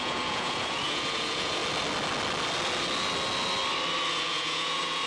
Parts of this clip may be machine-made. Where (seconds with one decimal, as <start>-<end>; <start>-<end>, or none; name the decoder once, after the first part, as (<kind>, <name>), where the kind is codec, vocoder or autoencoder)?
0.0-1.6 (vocoder, Vocos); 4.1-5.1